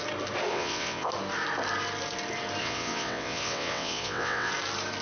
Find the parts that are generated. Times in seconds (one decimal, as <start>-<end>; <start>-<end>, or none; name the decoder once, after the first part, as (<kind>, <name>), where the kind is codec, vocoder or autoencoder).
0.5-1.1 (vocoder, WaveNeXt); 2.6-4.5